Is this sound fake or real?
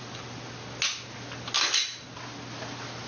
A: real